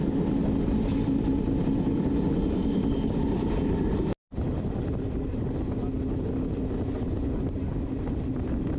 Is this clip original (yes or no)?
yes